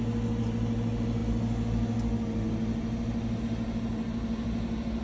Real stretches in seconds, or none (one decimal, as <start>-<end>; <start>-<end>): 0.0-5.0